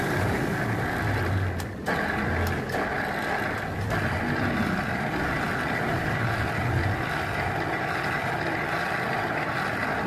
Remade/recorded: recorded